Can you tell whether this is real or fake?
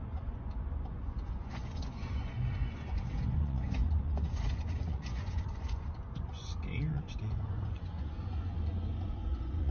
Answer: fake